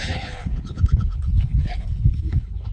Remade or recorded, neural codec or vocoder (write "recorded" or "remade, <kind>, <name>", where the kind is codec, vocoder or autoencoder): remade, codec, HILCodec